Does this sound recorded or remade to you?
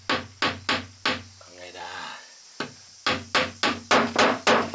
recorded